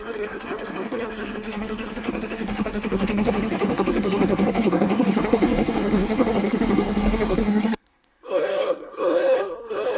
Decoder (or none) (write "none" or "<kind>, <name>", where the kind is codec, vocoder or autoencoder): codec, SNAC